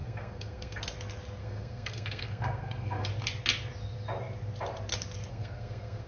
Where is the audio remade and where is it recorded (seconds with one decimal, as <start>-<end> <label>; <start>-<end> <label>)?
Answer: 0.0-0.8 remade; 0.8-1.4 recorded; 1.4-3.1 remade; 3.1-5.3 recorded; 5.3-6.1 remade